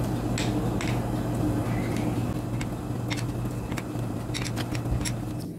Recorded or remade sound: recorded